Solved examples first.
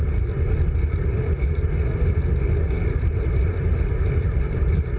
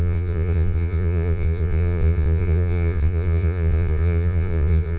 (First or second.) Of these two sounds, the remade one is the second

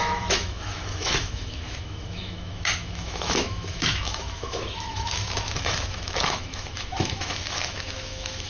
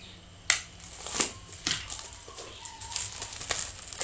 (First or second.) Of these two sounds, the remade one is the first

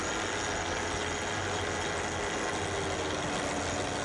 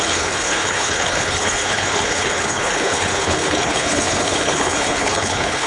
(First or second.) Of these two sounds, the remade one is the second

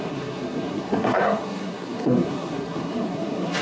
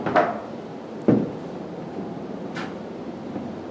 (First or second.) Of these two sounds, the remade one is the first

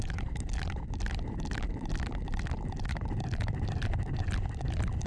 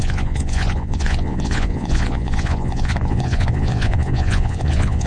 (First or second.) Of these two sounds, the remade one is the second